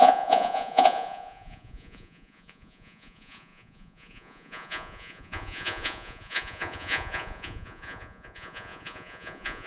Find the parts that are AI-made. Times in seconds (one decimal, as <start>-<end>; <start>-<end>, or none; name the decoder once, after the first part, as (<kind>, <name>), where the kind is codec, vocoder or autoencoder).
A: 0.0-9.7 (vocoder, Vocos)